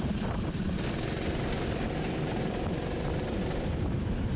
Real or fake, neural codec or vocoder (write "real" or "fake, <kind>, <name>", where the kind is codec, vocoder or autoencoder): real